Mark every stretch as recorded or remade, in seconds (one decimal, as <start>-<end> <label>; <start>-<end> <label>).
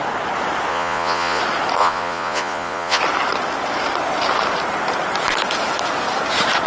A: 0.0-0.7 recorded; 0.7-1.4 remade; 1.4-1.8 recorded; 1.8-3.0 remade; 3.0-6.7 recorded